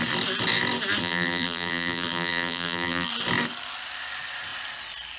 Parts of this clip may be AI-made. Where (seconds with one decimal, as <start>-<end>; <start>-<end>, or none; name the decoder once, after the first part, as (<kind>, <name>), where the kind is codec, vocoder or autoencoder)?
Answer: 1.0-3.1 (vocoder, BigVGAN v2)